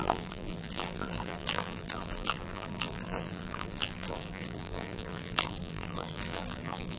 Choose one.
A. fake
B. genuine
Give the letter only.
A